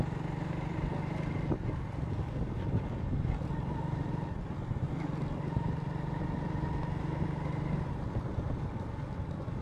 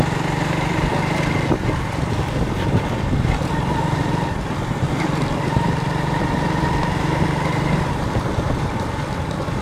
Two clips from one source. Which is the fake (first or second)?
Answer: second